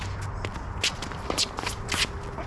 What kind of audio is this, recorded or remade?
recorded